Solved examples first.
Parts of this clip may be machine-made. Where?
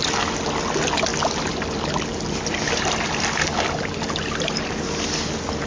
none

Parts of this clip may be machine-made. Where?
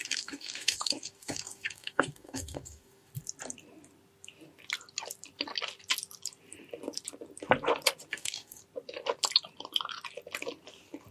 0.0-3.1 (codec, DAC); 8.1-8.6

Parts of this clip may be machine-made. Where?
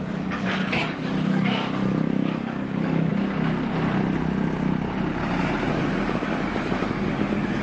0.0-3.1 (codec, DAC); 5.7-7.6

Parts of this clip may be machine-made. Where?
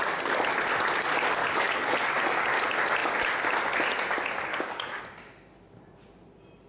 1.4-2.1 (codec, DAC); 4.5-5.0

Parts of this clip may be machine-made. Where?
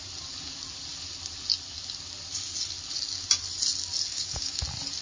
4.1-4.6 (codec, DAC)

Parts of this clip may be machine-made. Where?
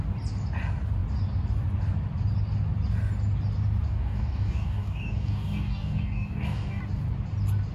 3.9-6.8 (codec, DAC)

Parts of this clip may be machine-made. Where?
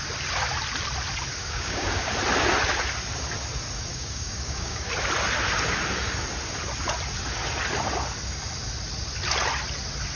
1.4-2.1 (codec, DAC); 3.9-4.9